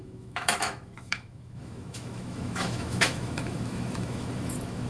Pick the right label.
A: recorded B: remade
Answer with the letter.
B